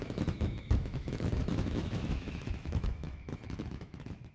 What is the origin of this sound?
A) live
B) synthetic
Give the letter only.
B